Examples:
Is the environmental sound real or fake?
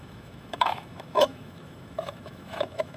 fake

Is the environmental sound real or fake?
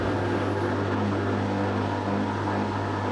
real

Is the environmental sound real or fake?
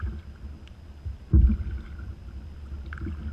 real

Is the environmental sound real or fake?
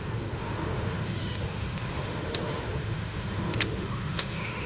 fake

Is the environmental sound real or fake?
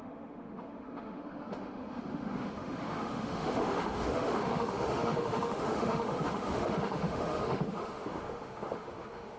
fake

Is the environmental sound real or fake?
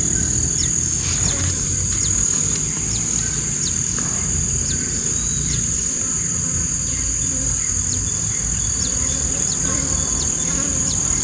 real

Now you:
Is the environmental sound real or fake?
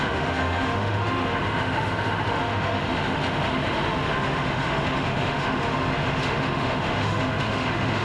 fake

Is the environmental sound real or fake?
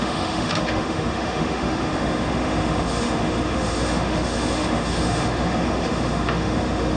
fake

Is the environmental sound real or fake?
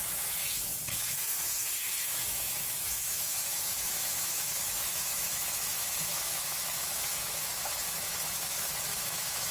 fake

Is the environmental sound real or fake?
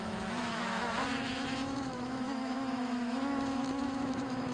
fake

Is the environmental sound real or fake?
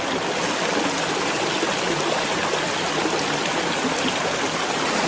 real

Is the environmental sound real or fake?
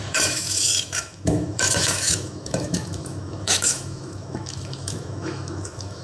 fake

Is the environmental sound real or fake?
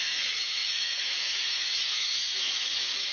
fake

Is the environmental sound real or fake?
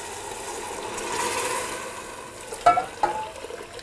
real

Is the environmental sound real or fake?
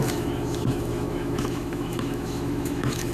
fake